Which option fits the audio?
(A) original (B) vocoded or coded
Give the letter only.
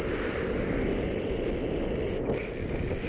A